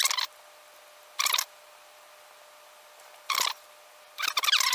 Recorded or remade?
remade